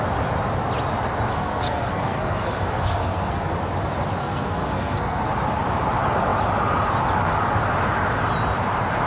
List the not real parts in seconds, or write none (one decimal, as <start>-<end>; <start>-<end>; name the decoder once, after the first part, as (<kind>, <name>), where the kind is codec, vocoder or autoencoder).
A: 1.3-3.5 (codec, SNAC); 4.2-5.3